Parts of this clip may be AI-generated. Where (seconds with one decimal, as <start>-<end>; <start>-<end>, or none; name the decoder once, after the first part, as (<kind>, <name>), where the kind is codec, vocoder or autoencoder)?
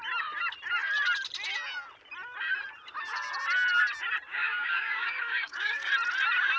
4.3-5.9 (codec, DAC)